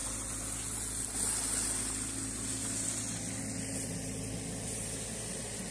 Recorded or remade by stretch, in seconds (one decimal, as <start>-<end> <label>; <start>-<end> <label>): 0.0-5.7 recorded